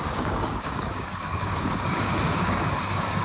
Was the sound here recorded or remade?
remade